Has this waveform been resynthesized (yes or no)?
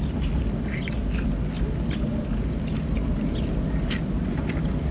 no